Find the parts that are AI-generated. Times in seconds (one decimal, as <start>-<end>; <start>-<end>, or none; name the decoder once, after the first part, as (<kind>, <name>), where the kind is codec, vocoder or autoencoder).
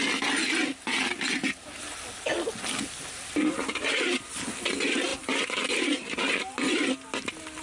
none